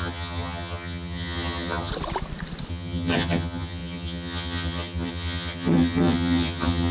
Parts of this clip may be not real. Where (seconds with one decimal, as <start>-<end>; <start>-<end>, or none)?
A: 0.0-1.9; 2.7-6.9